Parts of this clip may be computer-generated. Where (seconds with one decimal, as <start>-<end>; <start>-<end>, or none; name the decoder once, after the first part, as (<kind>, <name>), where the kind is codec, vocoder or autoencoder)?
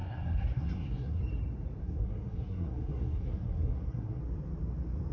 0.0-1.2 (codec, SNAC); 1.8-4.2